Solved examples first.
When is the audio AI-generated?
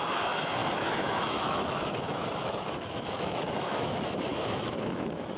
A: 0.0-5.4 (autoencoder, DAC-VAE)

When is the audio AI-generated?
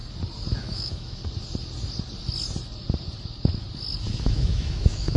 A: 0.6-1.2 (autoencoder, DAC-VAE); 4.2-5.2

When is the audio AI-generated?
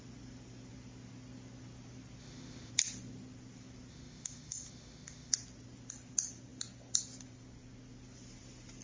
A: 2.2-2.7 (autoencoder, DAC-VAE); 3.9-5.3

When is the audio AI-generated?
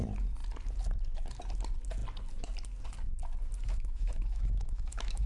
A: 3.6-5.3 (autoencoder, DAC-VAE)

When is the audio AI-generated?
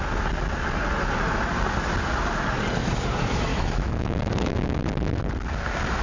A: 3.5-4.9 (autoencoder, DAC-VAE)